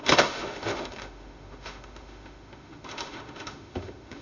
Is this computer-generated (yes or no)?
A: yes